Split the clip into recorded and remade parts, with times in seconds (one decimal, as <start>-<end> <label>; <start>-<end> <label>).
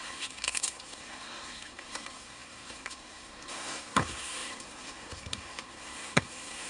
0.0-6.7 remade